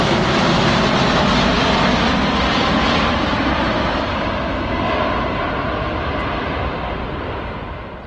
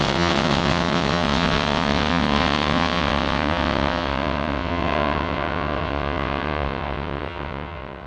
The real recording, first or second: first